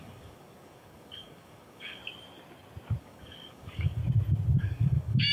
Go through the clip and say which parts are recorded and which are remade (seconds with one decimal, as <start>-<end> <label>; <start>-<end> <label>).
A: 0.0-2.0 remade; 2.0-3.0 recorded; 3.0-4.0 remade; 4.0-4.6 recorded; 4.6-5.3 remade